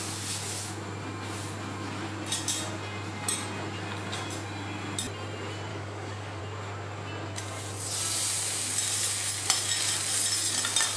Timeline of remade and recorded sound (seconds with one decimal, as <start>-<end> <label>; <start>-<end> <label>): 0.0-5.7 recorded; 5.7-6.4 remade; 6.4-11.0 recorded